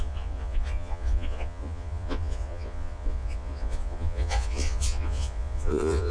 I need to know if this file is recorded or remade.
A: remade